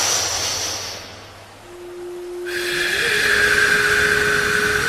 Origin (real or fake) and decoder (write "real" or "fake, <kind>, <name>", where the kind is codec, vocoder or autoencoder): real